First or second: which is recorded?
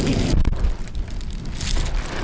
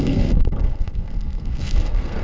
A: first